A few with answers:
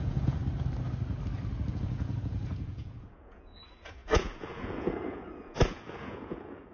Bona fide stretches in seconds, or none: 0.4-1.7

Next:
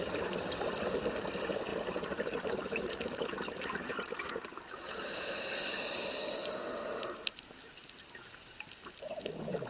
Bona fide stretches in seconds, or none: 0.0-9.7

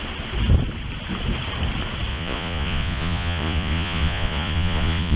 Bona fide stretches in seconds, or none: 0.0-2.1